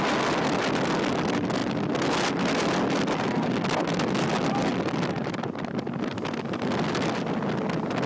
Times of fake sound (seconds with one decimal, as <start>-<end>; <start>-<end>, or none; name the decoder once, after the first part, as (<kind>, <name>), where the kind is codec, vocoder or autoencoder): 4.7-6.7 (vocoder, BigVGAN v2)